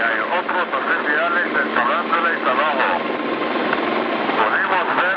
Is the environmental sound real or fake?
real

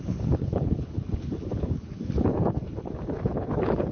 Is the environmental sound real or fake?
fake